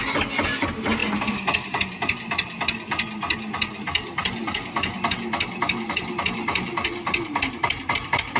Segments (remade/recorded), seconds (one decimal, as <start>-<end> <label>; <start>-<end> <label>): 0.0-8.4 recorded